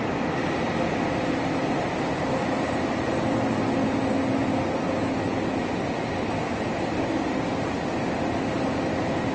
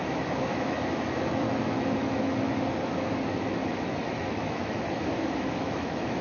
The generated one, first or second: second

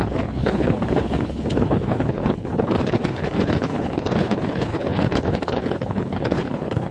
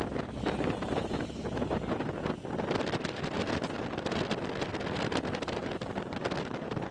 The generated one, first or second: first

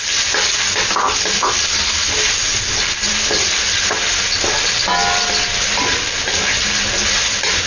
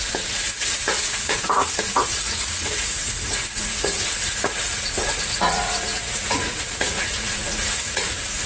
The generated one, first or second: second